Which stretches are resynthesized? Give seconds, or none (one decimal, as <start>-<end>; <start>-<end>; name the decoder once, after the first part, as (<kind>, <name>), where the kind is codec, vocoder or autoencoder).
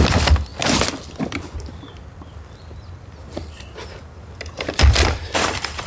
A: 5.2-5.9 (vocoder, BigVGAN v2)